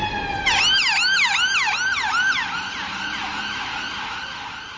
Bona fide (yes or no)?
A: yes